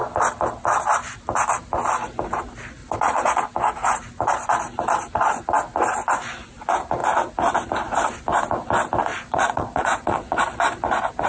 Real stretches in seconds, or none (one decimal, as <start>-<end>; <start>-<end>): 0.0-2.8; 3.4-9.1; 10.4-11.3